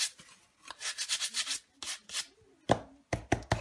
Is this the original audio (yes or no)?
yes